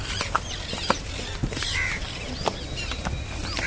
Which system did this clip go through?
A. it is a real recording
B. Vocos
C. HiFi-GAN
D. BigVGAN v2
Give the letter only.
A